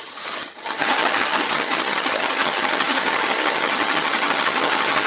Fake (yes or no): yes